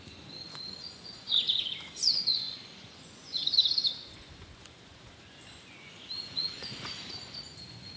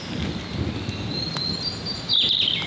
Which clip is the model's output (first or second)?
first